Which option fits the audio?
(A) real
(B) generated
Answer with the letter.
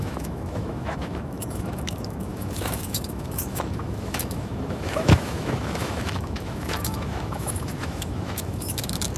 B